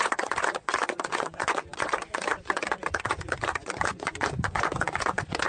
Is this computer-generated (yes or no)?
yes